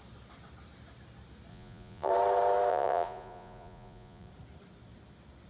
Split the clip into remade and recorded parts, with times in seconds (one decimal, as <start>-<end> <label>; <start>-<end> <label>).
0.0-1.5 recorded; 1.5-2.1 remade; 2.1-2.7 recorded; 2.7-4.3 remade; 4.3-5.5 recorded